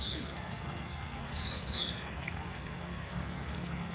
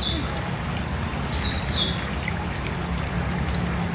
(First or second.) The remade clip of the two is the first